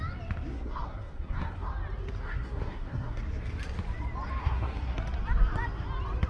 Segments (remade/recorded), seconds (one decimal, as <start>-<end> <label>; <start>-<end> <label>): 0.0-0.5 recorded; 0.5-1.7 remade; 1.7-2.2 recorded; 2.2-3.2 remade; 3.2-4.4 recorded; 4.4-5.0 remade; 5.0-6.3 recorded